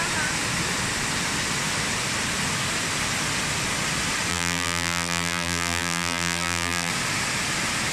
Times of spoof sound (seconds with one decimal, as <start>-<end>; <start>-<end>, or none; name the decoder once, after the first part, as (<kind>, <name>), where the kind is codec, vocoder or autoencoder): 4.3-6.9 (vocoder, BigVGAN v2)